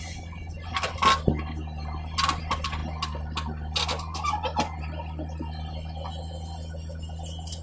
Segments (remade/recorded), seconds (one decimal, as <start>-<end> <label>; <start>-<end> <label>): 0.0-7.6 recorded